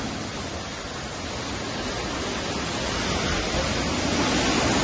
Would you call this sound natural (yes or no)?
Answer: yes